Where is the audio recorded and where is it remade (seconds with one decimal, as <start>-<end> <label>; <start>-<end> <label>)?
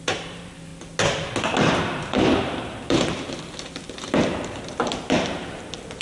0.0-0.7 remade; 0.7-1.7 recorded; 1.7-6.0 remade